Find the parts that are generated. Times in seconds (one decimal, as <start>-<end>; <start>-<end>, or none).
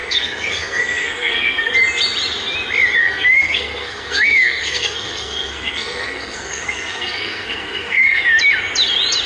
0.0-1.7; 3.0-8.2